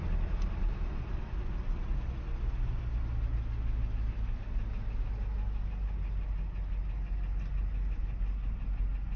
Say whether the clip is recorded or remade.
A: recorded